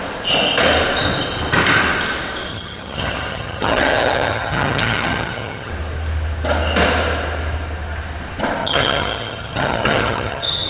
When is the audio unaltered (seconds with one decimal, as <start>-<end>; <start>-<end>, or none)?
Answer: 0.0-2.5; 5.7-8.6